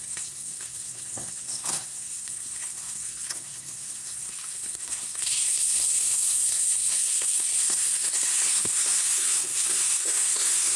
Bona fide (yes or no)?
no